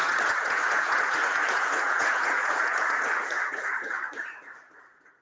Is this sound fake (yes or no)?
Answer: yes